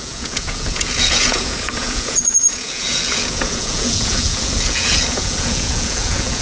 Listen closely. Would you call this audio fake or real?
fake